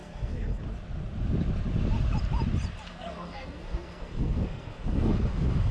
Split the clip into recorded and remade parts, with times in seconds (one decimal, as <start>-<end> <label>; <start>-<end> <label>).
0.0-0.6 remade; 0.6-2.9 recorded; 2.9-5.7 remade